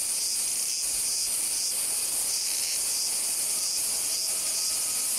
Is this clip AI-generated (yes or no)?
no